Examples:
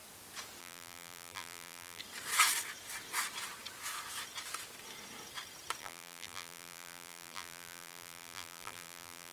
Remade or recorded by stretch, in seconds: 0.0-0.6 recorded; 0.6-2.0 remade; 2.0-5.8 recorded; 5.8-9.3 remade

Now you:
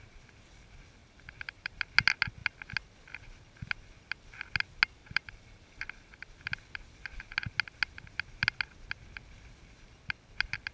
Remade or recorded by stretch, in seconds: 0.0-1.0 recorded; 1.0-1.7 remade; 1.7-5.0 recorded; 5.0-6.3 remade; 6.3-10.7 recorded

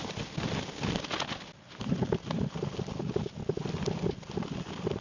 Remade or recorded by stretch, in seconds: 0.0-5.0 recorded